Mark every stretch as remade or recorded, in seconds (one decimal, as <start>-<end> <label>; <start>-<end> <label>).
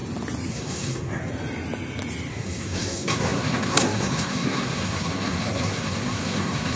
0.0-0.5 recorded; 0.5-1.2 remade; 1.2-2.3 recorded; 2.3-6.8 remade